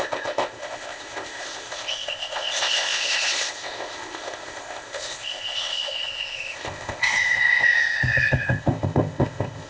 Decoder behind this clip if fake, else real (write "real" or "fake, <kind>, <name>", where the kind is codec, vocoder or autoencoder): fake, codec, ZipCodec